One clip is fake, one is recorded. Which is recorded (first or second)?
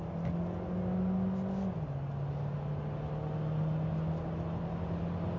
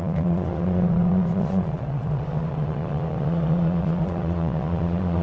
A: first